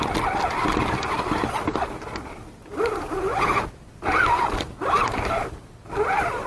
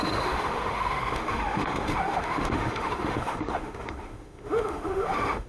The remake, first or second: second